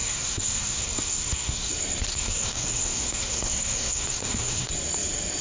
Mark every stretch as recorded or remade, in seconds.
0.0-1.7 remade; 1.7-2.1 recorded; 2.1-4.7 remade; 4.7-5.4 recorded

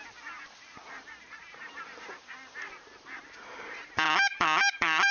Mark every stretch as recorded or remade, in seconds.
0.0-5.1 recorded

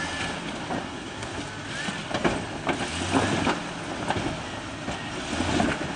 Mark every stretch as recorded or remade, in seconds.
0.0-0.8 recorded; 0.8-1.4 remade; 1.4-6.0 recorded

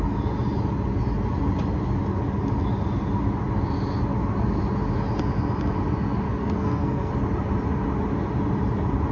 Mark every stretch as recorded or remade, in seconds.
0.0-6.4 recorded; 6.4-7.1 remade; 7.1-9.1 recorded